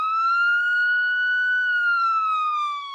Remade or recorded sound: remade